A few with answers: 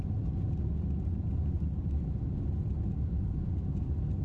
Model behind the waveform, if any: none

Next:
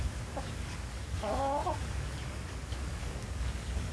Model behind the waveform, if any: codec, DAC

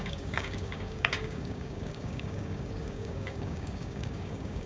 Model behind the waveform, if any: codec, DAC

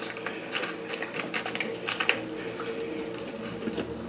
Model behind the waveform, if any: none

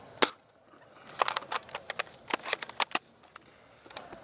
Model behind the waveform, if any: none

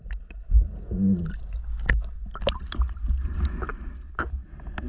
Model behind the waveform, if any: none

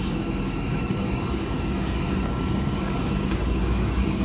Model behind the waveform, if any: codec, DAC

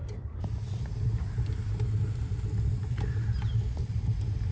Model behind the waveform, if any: none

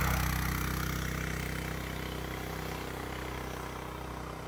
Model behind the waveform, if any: none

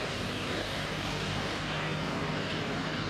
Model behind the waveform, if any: codec, DAC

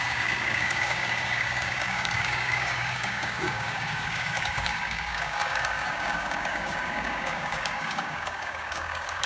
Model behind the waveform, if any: codec, DAC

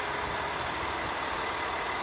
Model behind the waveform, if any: none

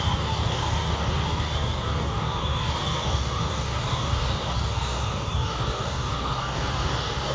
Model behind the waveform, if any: codec, DAC